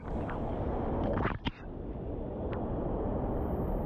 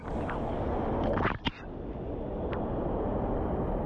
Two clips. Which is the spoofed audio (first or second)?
first